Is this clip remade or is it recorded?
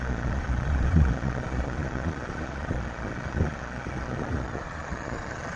remade